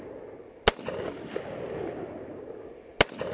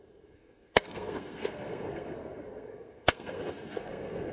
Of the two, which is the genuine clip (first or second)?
first